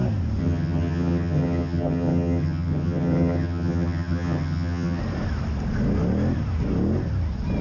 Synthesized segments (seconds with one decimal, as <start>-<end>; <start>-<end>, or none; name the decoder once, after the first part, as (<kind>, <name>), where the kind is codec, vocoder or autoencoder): 0.4-5.0 (vocoder, HiFi-GAN)

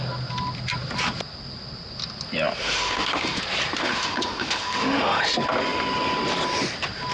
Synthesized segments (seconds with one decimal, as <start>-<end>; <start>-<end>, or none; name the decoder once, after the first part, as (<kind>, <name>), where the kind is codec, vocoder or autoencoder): 2.6-3.4 (autoencoder, DAC-VAE); 3.8-5.2

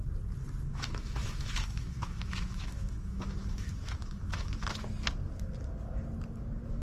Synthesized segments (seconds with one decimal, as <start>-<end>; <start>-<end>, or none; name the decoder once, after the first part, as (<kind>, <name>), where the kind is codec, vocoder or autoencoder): 0.7-4.8 (autoencoder, DAC-VAE)

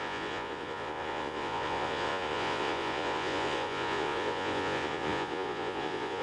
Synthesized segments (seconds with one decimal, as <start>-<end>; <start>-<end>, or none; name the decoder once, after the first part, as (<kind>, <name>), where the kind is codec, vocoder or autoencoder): 0.0-6.2 (vocoder, Vocos)

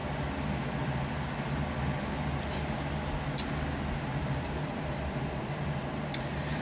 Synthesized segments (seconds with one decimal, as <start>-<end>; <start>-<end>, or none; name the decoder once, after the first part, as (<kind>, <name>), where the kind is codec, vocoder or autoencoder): 4.2-5.8 (vocoder, BigVGAN v2)

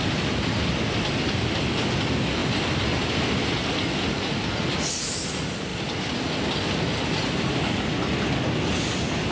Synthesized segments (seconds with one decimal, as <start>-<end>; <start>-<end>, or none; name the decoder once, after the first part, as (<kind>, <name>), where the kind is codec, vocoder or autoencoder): 5.7-7.8 (vocoder, BigVGAN v2)